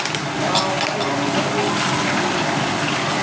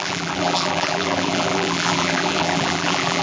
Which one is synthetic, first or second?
second